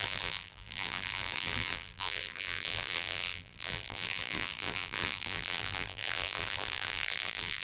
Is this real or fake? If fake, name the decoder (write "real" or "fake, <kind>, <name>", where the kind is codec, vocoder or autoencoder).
fake, vocoder, BigVGAN v2